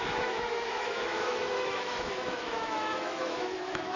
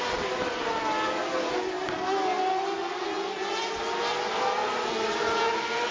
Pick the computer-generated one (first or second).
first